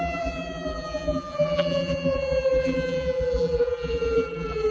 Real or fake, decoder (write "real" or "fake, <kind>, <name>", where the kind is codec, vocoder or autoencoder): fake, vocoder, BigVGAN v2